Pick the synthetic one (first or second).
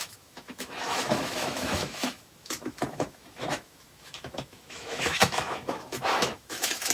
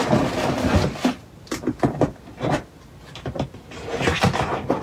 first